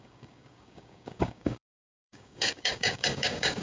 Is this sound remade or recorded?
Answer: remade